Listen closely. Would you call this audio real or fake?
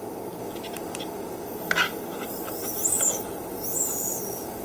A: real